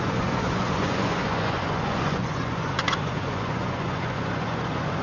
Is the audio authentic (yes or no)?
no